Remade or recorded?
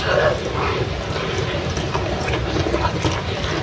recorded